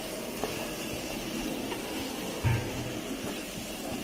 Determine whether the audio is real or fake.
real